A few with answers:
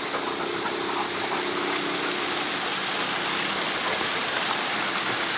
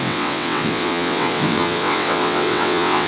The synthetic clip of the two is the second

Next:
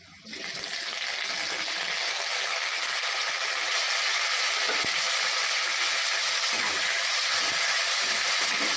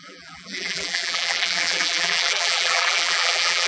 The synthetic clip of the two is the second